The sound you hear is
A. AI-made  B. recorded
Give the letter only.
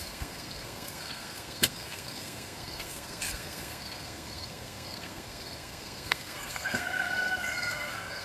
A